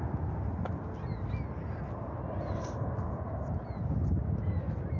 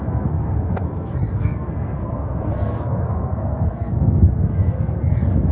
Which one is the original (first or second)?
first